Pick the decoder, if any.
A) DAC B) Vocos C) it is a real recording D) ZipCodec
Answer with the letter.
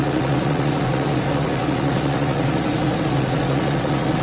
B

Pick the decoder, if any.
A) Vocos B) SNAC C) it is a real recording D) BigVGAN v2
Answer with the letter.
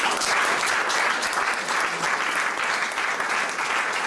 C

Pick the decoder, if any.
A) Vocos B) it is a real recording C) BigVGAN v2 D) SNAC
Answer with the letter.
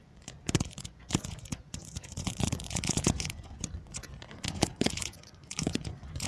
A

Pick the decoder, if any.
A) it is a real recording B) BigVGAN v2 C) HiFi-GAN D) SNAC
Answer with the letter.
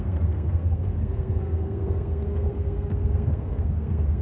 D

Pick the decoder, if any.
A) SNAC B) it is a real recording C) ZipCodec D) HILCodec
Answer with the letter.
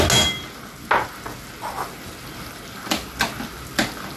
B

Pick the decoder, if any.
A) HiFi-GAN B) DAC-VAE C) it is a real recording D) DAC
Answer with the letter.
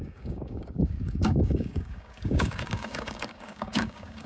D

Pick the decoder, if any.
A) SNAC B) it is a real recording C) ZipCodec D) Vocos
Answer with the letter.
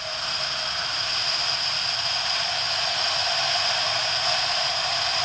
B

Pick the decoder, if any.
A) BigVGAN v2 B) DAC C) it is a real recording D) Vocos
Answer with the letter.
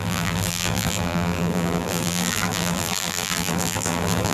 A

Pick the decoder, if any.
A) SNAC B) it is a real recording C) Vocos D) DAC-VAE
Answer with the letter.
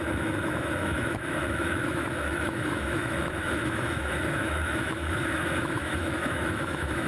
D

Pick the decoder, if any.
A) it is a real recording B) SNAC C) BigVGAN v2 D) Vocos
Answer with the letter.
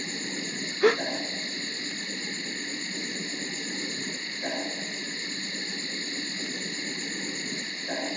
A